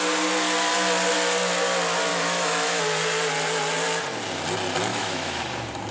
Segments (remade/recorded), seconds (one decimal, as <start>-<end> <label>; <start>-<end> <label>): 0.0-2.1 recorded; 2.1-2.8 remade; 2.8-4.9 recorded; 4.9-5.4 remade; 5.4-5.9 recorded